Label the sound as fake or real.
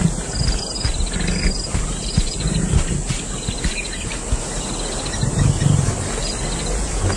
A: real